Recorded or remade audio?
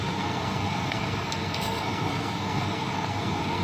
remade